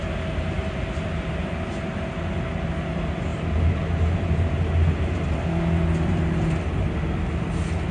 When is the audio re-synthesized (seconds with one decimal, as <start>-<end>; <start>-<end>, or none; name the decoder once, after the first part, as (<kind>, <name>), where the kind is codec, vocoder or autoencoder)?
none